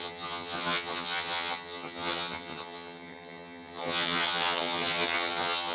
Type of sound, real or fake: fake